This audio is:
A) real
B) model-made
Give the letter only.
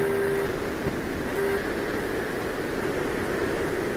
A